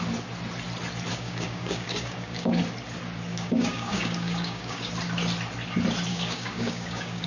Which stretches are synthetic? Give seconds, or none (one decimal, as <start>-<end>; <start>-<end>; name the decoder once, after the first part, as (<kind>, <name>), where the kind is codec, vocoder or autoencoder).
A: 1.1-2.6 (codec, DAC); 3.3-4.9; 6.1-7.3